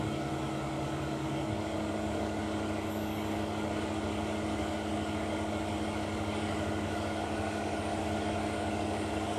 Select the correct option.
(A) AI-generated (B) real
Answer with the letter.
A